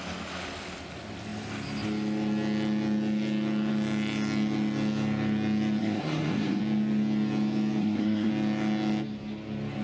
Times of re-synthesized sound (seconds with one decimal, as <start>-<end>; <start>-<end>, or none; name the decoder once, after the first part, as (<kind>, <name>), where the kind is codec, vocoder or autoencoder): 5.8-6.6 (codec, SNAC); 7.8-8.3